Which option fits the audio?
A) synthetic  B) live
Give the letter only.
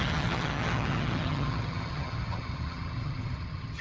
A